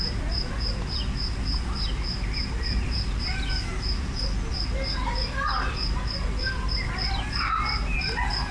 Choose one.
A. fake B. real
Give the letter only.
B